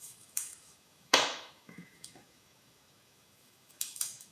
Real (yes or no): no